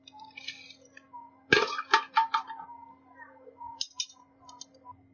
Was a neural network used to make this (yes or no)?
no